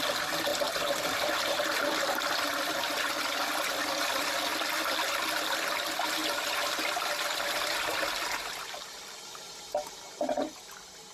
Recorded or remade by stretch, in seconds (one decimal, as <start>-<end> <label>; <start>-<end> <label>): 0.0-0.5 recorded; 0.5-2.2 remade; 2.2-4.5 recorded; 4.5-5.2 remade; 5.2-6.2 recorded; 6.2-9.4 remade; 9.4-11.1 recorded